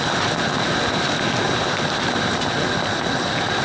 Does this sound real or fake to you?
real